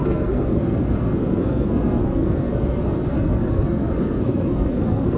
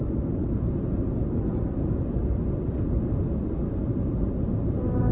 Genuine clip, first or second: second